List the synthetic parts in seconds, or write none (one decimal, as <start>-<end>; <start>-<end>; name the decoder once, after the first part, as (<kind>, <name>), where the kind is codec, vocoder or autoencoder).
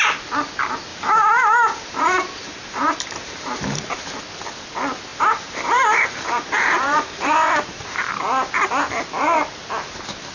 0.9-4.2 (vocoder, BigVGAN v2); 5.1-8.1